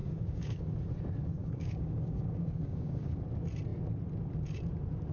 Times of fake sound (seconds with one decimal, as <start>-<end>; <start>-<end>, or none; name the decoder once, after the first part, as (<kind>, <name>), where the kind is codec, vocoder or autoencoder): 0.0-0.6 (codec, DAC); 1.4-3.2